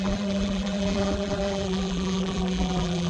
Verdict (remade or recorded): remade